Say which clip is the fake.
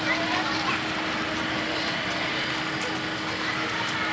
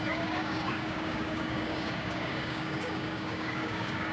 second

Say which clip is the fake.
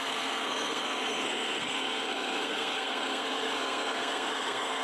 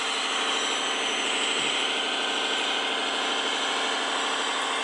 first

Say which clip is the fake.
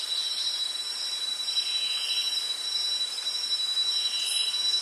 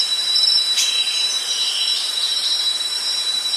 second